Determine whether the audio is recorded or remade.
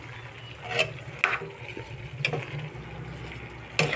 recorded